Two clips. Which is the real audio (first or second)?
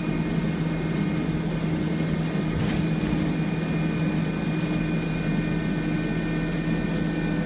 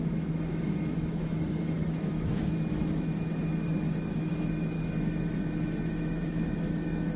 first